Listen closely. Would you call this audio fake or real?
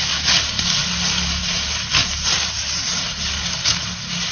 real